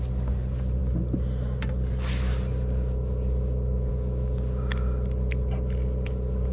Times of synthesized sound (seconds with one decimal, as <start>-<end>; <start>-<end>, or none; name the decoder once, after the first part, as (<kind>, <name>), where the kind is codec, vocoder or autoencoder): none